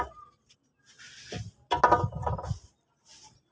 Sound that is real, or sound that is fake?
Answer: real